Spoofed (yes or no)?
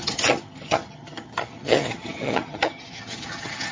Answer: yes